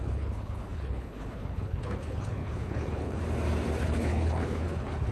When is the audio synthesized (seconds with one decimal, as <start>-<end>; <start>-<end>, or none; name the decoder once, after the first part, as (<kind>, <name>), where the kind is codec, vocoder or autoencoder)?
0.0-3.2 (codec, HILCodec); 3.8-5.1